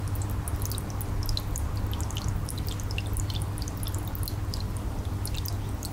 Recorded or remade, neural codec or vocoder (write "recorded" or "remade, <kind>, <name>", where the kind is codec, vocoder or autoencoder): recorded